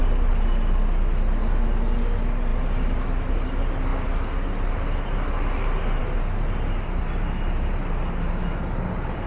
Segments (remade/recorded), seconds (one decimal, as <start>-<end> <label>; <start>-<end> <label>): 0.0-9.3 recorded